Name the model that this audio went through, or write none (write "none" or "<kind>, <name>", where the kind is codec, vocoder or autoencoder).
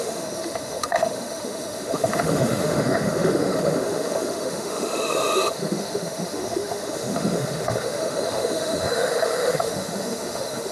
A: autoencoder, DAC-VAE